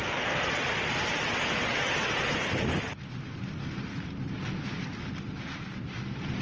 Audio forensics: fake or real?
real